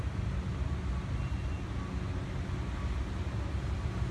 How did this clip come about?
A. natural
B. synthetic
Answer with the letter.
A